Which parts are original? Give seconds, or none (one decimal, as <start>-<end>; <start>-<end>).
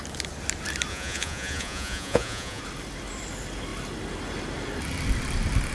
0.0-0.9; 2.6-5.7